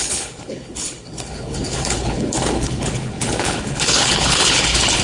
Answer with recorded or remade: remade